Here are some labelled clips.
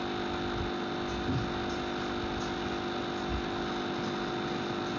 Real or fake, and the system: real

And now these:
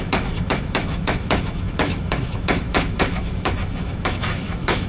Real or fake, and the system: fake, autoencoder, DAC-VAE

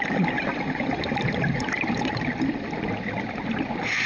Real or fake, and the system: real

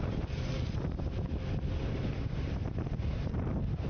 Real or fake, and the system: real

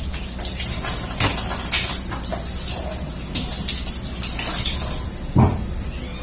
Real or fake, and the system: real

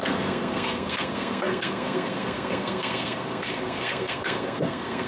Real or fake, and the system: fake, codec, SNAC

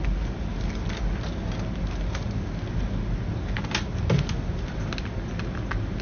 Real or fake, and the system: real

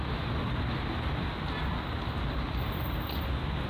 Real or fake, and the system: real